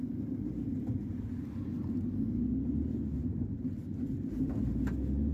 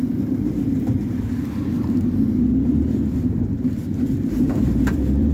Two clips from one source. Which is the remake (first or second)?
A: second